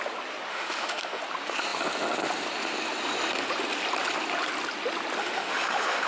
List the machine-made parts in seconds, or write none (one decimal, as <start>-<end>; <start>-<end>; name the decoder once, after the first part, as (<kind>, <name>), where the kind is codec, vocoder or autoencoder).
0.5-1.2 (autoencoder, DAC-VAE); 5.2-6.1